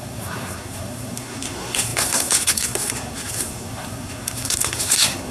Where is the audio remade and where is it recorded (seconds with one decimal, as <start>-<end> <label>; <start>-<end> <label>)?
0.0-5.3 remade